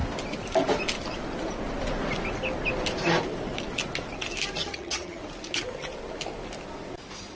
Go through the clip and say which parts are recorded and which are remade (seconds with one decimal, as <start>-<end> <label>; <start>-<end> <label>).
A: 0.0-4.6 recorded; 4.6-5.2 remade; 5.2-7.4 recorded